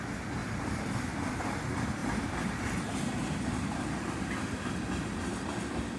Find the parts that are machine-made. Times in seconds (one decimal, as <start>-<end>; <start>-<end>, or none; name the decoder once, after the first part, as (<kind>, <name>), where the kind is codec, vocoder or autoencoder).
0.4-1.5 (vocoder, BigVGAN v2); 2.0-4.7